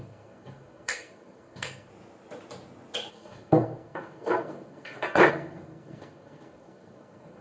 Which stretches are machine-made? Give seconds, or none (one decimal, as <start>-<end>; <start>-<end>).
0.0-1.9; 3.1-7.4